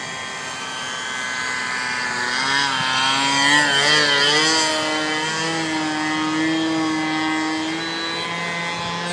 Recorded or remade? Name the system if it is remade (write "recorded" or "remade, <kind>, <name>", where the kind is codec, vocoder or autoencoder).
recorded